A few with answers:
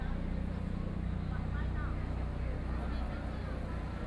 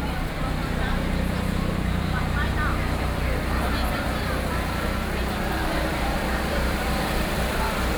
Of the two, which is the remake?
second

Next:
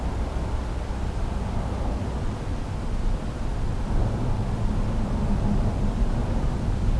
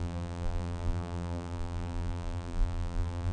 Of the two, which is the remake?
second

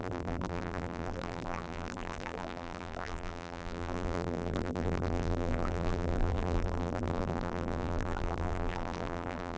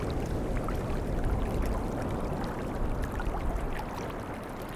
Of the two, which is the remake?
first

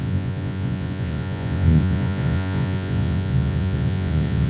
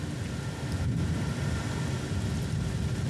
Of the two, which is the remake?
first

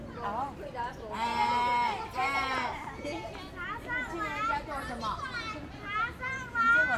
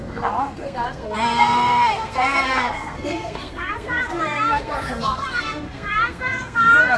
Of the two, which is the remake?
second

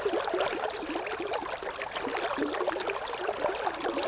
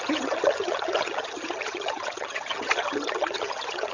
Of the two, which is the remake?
second